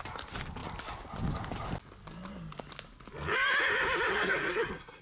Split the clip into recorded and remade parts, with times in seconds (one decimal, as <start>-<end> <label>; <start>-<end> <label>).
0.0-4.1 recorded; 4.1-5.0 remade